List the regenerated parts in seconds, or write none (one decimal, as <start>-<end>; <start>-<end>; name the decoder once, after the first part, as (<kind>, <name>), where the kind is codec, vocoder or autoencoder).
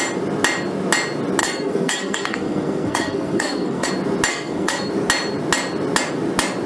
1.4-3.9 (codec, SNAC); 4.3-4.9